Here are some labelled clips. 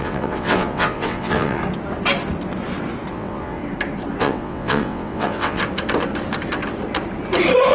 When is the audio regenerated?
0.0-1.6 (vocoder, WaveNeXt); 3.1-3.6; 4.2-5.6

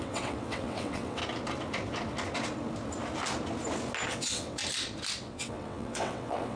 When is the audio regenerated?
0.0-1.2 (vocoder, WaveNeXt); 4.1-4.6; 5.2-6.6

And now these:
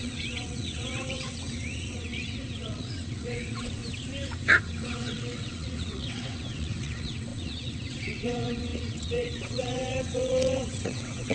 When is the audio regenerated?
0.0-3.8 (vocoder, WaveNeXt); 4.6-11.3

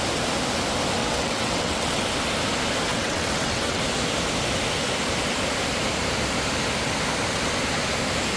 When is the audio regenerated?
1.0-2.0 (vocoder, WaveNeXt); 2.9-3.8

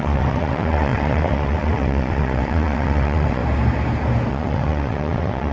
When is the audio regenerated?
0.0-3.4 (vocoder, WaveNeXt); 4.3-5.5

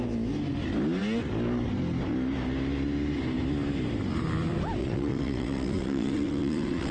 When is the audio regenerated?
4.8-6.9 (vocoder, WaveNeXt)

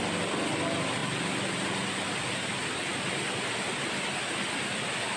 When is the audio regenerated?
none

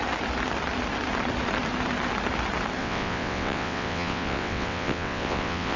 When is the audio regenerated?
2.8-5.8 (vocoder, WaveNeXt)